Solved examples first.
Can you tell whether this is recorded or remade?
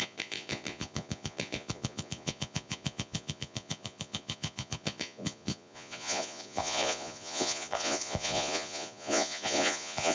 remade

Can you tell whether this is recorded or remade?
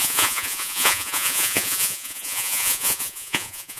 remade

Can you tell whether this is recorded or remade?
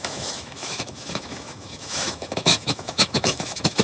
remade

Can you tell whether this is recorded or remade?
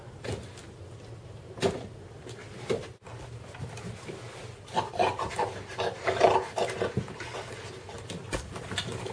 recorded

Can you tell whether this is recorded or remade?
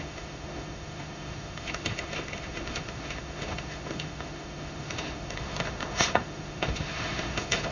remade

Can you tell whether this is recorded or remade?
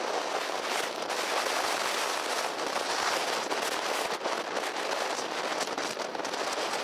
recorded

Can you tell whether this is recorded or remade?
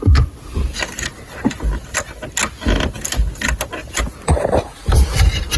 recorded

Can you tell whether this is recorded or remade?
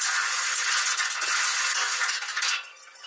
remade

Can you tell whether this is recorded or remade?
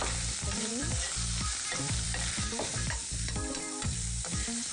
remade